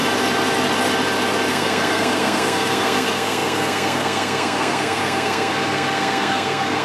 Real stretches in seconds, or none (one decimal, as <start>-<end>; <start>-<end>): 0.0-1.5